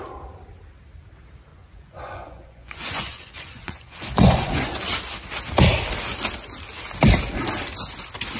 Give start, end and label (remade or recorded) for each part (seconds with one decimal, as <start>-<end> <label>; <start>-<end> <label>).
0.0-1.5 recorded; 1.5-4.8 remade; 4.8-8.4 recorded